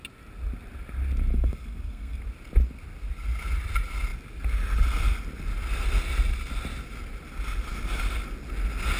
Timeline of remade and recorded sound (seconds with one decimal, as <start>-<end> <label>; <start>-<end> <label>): 0.0-1.3 recorded; 1.3-2.2 remade; 2.2-9.0 recorded